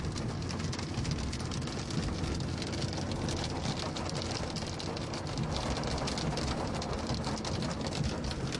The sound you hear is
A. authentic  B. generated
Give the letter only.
A